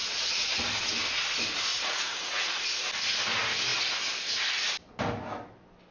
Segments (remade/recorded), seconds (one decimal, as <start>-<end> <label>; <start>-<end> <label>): 0.0-0.6 remade; 0.6-1.7 recorded; 1.7-2.9 remade; 2.9-5.9 recorded